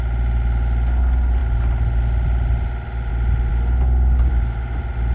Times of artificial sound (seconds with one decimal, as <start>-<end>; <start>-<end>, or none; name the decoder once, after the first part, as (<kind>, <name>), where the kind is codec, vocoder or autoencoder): none